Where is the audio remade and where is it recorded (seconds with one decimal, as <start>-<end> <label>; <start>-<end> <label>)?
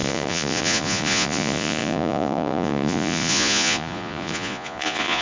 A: 0.0-5.2 remade